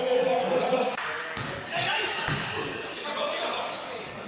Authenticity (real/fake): fake